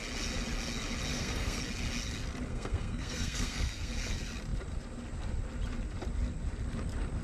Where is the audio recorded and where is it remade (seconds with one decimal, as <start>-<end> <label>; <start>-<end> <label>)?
0.0-1.1 recorded; 1.1-1.6 remade; 1.6-2.5 recorded; 2.5-3.9 remade; 3.9-7.2 recorded